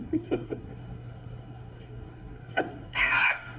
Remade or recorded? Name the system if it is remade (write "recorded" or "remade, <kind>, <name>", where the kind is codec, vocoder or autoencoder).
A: remade, codec, SNAC